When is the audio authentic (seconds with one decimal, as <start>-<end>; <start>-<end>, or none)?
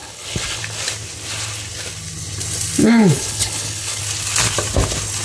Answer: 0.6-2.8; 4.0-5.2